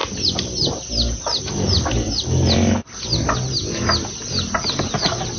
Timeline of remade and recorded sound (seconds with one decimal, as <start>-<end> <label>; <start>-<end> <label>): 0.0-5.4 recorded